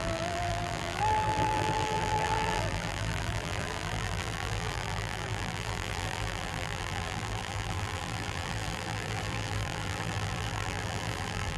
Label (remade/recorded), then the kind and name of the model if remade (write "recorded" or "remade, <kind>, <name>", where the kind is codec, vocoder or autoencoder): remade, vocoder, BigVGAN v2